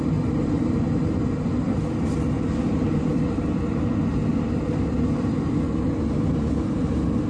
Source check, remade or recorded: recorded